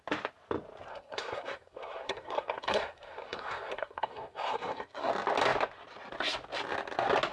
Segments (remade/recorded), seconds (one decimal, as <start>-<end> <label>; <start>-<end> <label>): 0.0-0.9 recorded; 0.9-5.1 remade; 5.1-7.3 recorded